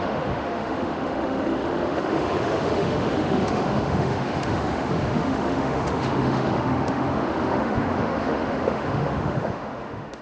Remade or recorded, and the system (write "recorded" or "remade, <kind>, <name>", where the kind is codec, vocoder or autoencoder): remade, autoencoder, DAC-VAE